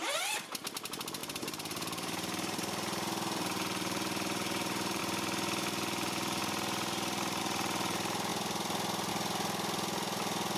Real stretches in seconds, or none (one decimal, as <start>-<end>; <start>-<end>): 0.0-1.2; 5.0-6.4; 7.4-10.6